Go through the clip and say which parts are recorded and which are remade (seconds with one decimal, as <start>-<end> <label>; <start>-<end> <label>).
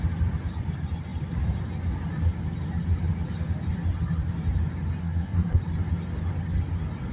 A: 0.0-5.0 recorded; 5.0-5.6 remade; 5.6-7.1 recorded